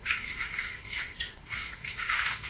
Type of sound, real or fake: fake